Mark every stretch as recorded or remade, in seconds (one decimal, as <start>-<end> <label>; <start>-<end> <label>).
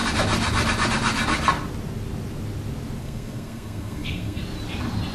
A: 0.0-3.0 recorded; 3.0-4.4 remade; 4.4-5.1 recorded